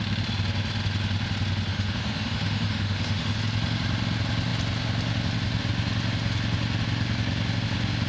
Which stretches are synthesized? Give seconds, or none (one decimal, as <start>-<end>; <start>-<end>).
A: 1.7-3.4